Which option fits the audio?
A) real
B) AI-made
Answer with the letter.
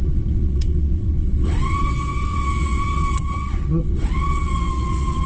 B